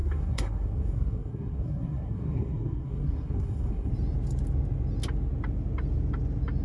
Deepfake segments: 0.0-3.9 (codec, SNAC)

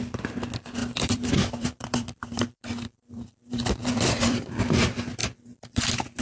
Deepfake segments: 0.8-4.5 (vocoder, BigVGAN v2); 5.2-6.2